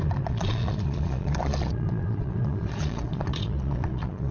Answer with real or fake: fake